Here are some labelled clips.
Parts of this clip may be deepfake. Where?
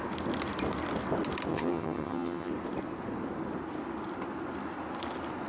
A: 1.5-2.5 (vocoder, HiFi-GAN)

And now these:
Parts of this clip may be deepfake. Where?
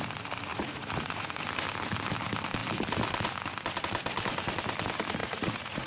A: 0.5-1.4 (vocoder, Vocos); 5.2-5.9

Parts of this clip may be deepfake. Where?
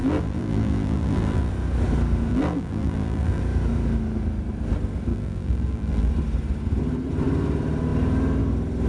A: 0.0-1.5 (vocoder, BigVGAN v2); 2.3-3.4; 5.1-6.1